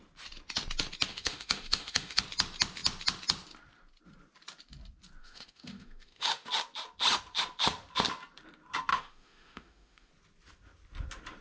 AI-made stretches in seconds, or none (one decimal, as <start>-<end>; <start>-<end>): 1.1-2.2; 5.2-6.5; 8.9-10.1